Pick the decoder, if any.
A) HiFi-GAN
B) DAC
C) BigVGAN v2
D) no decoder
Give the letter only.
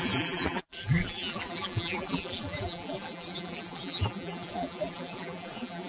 C